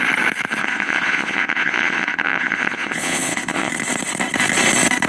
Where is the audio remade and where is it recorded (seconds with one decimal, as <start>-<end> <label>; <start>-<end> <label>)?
0.0-0.6 recorded; 0.6-3.7 remade; 3.7-5.1 recorded

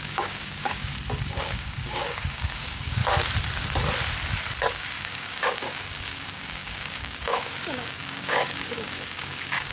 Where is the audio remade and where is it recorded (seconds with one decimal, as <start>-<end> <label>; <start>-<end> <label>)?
0.0-0.9 remade; 0.9-1.4 recorded; 1.4-3.0 remade; 3.0-4.7 recorded; 4.7-9.7 remade

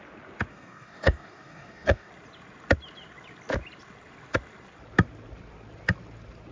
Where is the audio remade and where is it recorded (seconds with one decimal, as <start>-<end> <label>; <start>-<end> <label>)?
0.0-0.5 recorded; 0.5-2.1 remade; 2.1-6.5 recorded

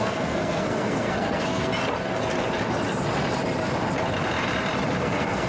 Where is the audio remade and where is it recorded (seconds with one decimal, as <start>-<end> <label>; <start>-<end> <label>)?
0.0-1.7 remade; 1.7-5.0 recorded; 5.0-5.5 remade

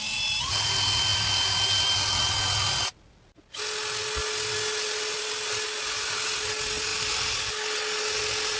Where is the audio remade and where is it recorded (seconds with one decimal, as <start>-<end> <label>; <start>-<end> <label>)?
0.0-8.6 recorded